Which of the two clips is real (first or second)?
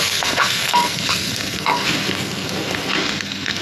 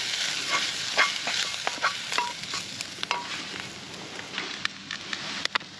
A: second